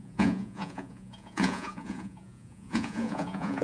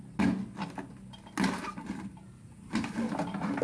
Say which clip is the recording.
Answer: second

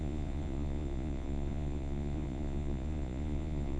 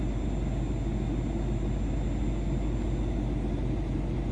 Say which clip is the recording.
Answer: second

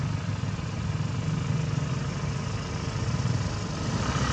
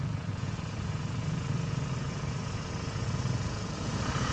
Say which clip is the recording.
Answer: first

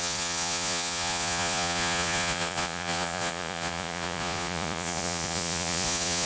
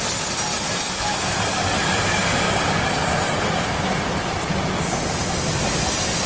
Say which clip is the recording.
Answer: second